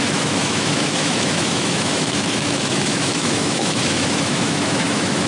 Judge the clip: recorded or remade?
remade